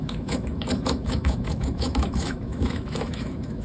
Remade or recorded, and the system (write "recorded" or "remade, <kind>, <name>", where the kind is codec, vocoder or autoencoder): remade, autoencoder, DAC-VAE